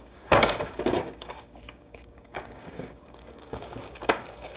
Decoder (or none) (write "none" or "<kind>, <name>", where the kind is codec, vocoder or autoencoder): codec, DAC